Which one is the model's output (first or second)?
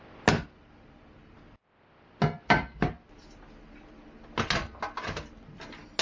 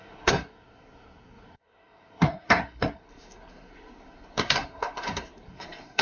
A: second